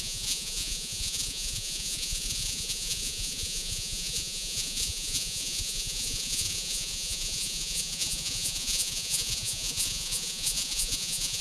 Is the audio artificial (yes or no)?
yes